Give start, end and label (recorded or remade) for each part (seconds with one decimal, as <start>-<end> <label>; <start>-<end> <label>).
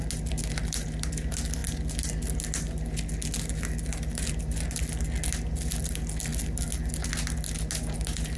0.0-8.4 recorded